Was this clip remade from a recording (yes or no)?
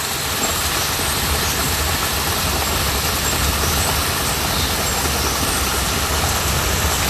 no